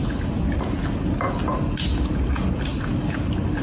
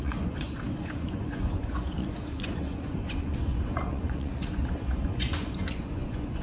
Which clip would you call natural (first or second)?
first